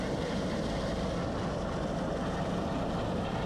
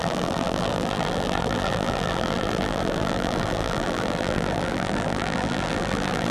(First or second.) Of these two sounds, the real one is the first